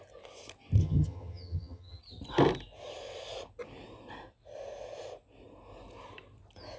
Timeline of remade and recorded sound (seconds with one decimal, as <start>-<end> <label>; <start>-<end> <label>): 0.0-0.8 recorded; 0.8-2.0 remade; 2.0-6.8 recorded